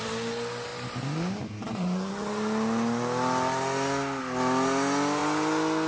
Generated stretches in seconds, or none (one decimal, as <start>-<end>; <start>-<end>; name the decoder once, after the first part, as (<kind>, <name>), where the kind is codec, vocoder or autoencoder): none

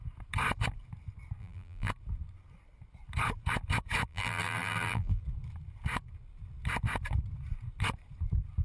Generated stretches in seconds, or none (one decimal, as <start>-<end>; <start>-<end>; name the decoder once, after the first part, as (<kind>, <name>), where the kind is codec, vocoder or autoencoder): 1.4-1.9 (vocoder, BigVGAN v2); 4.1-5.2

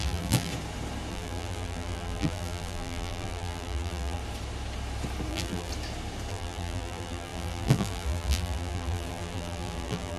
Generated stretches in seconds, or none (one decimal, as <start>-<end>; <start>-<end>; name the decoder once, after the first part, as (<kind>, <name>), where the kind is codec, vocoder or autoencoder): 0.0-0.5 (vocoder, BigVGAN v2); 1.1-4.2; 5.3-5.7; 6.3-10.2